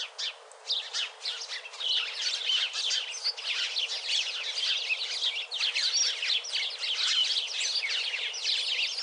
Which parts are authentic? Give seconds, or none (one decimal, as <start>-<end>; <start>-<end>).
0.0-9.0

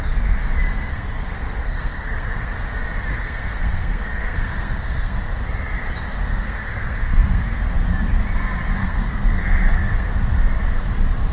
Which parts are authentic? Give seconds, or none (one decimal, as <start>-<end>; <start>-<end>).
0.0-0.9; 2.5-3.1; 5.2-6.3; 7.6-8.8; 10.1-11.3

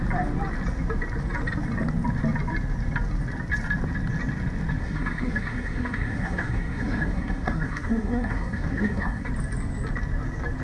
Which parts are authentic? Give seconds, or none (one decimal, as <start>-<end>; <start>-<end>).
0.0-4.8; 9.3-10.6

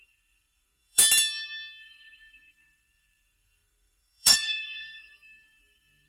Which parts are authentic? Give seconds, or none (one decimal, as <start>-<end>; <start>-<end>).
1.0-1.8

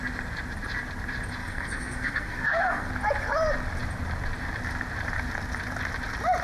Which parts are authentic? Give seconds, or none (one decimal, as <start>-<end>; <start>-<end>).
0.0-1.4; 2.9-6.4

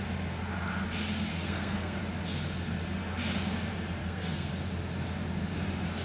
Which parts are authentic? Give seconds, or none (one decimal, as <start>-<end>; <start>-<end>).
0.0-1.3; 2.0-4.0; 4.5-6.0